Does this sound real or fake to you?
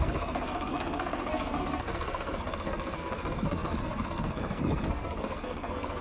fake